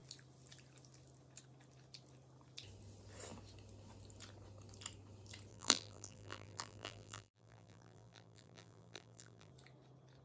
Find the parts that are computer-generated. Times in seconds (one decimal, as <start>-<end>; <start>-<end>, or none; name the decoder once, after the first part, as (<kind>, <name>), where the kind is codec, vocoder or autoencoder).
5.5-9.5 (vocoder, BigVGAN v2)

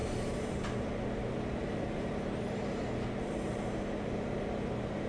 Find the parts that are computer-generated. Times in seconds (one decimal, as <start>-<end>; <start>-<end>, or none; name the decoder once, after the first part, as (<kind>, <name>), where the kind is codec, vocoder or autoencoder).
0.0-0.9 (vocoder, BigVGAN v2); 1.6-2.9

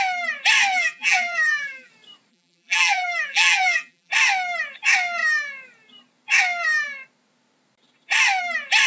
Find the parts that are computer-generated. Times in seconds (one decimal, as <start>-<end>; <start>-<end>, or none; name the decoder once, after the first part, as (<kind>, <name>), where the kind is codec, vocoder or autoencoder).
0.7-1.9 (vocoder, BigVGAN v2); 2.3-4.1

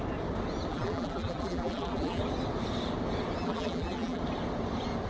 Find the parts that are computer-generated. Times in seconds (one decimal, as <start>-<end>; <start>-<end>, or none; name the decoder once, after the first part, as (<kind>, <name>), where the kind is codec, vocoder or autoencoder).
0.7-2.2 (vocoder, BigVGAN v2); 3.4-4.2

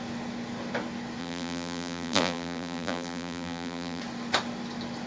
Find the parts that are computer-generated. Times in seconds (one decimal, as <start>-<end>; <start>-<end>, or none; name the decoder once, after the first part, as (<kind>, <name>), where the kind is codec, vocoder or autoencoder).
1.2-4.0 (vocoder, BigVGAN v2)

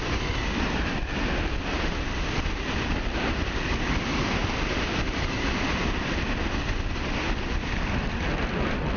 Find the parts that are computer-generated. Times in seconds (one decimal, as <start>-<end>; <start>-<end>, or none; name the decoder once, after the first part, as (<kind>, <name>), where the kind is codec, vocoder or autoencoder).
4.4-6.1 (vocoder, BigVGAN v2)